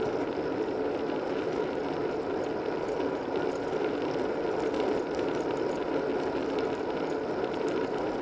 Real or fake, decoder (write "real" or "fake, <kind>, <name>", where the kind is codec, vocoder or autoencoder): real